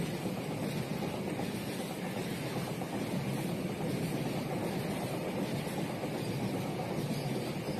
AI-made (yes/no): no